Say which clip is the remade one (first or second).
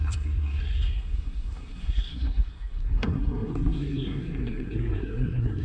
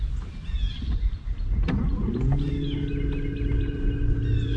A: first